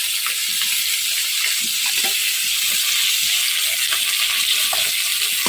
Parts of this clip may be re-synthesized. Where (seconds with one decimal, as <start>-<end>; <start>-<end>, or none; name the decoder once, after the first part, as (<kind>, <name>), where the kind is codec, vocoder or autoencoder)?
none